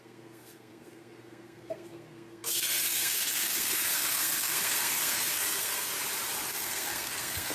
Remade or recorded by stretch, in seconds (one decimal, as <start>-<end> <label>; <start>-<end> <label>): 0.0-5.9 remade; 5.9-6.5 recorded; 6.5-7.5 remade